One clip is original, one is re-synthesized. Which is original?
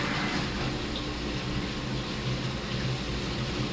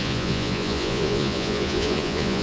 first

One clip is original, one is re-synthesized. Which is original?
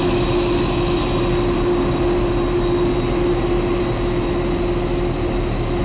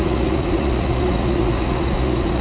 first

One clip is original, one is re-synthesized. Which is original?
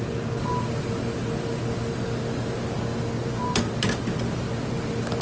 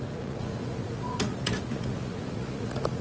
first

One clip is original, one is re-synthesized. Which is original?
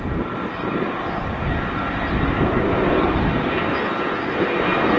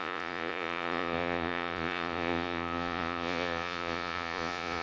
first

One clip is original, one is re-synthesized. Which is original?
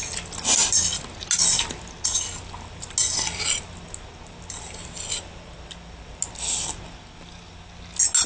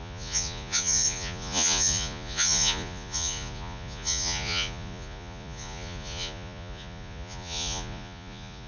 first